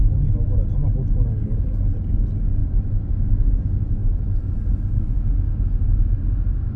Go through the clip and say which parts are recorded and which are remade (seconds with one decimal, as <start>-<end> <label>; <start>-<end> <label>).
0.0-2.6 recorded; 2.6-3.1 remade; 3.1-6.8 recorded